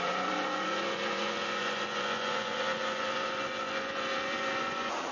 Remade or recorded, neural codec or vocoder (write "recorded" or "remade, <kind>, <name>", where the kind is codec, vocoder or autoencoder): remade, vocoder, Vocos